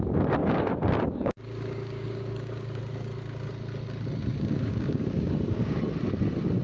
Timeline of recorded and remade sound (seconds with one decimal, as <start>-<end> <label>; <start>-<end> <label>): 0.0-0.4 recorded; 0.4-2.8 remade; 2.8-4.3 recorded; 4.3-5.8 remade; 5.8-6.6 recorded